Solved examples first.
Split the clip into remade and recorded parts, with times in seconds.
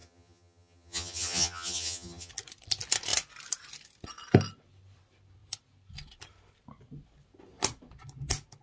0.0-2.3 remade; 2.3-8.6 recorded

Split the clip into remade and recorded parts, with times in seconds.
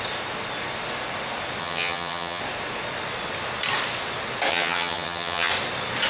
0.0-1.6 recorded; 1.6-2.4 remade; 2.4-4.5 recorded; 4.5-5.5 remade; 5.5-6.1 recorded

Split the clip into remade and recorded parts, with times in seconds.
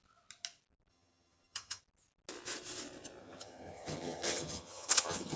0.0-0.9 recorded; 0.9-1.8 remade; 1.8-3.2 recorded; 3.2-5.4 remade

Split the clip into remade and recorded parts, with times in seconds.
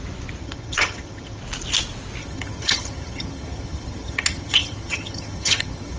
0.0-0.4 recorded; 0.4-1.4 remade; 1.4-2.2 recorded; 2.2-6.0 remade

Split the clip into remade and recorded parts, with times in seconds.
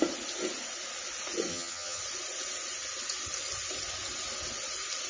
0.0-1.5 recorded; 1.5-2.0 remade; 2.0-5.1 recorded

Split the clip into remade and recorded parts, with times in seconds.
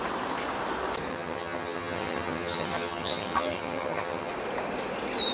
0.0-1.1 recorded; 1.1-4.3 remade; 4.3-5.3 recorded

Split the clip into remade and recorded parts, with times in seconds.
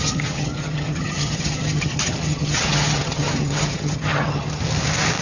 0.0-4.6 remade; 4.6-5.2 recorded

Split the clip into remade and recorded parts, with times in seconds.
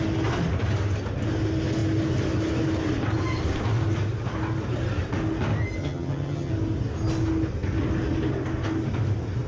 0.0-5.8 recorded; 5.8-6.5 remade; 6.5-9.5 recorded